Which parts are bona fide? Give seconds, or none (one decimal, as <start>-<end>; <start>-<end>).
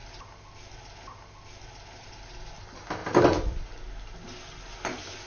0.0-5.3